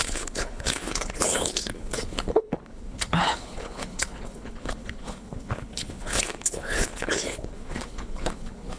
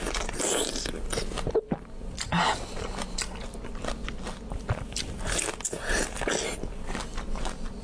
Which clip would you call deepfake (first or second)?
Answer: first